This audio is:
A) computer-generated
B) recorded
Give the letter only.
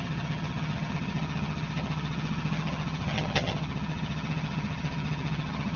A